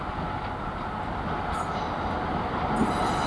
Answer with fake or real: real